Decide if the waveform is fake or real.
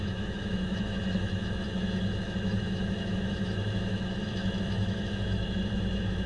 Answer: fake